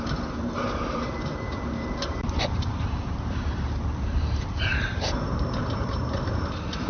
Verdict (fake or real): fake